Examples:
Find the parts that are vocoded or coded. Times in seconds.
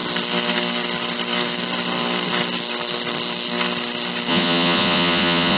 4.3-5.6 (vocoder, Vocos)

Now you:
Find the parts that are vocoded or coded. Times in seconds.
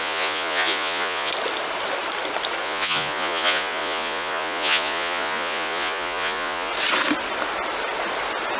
0.0-1.3 (vocoder, Vocos); 2.6-6.7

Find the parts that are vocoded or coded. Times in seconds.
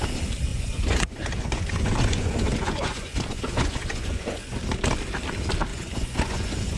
0.5-4.6 (vocoder, Vocos); 5.7-6.8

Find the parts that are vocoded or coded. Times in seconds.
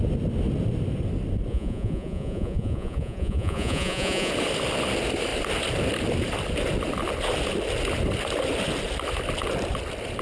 1.5-4.3 (vocoder, Vocos)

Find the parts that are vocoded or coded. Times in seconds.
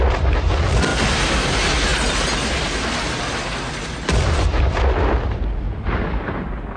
none